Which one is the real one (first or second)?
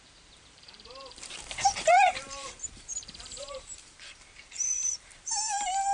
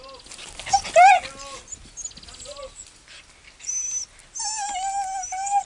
second